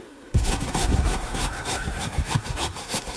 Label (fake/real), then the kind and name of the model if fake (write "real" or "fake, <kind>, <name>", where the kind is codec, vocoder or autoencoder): fake, codec, SNAC